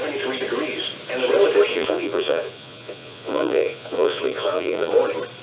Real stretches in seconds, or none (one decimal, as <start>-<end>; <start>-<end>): 0.0-1.7; 4.9-5.4